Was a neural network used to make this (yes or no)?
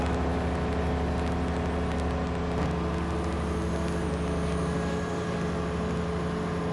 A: no